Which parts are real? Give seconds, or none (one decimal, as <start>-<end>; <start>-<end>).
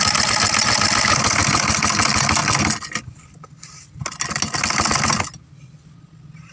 0.0-6.5